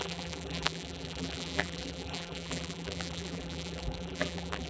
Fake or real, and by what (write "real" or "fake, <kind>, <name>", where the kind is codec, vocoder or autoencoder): fake, vocoder, BigVGAN v2